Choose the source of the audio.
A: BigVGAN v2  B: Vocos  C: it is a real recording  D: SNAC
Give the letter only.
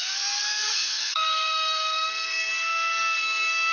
D